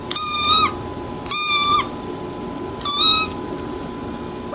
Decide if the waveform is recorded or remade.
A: recorded